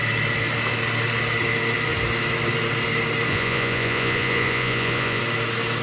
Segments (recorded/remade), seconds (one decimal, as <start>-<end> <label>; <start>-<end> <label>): 0.0-3.3 recorded; 3.3-5.2 remade; 5.2-5.8 recorded